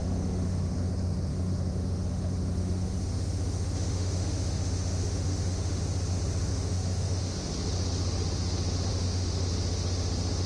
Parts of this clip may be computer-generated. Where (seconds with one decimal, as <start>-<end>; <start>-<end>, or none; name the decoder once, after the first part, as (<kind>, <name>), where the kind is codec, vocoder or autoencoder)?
0.0-0.9 (autoencoder, DAC-VAE); 1.3-5.8; 6.5-7.2; 8.9-9.5